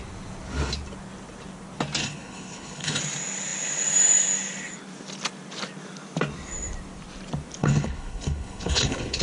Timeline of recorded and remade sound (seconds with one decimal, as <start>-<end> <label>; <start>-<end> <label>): 0.0-2.0 recorded; 2.0-3.0 remade; 3.0-7.6 recorded; 7.6-9.2 remade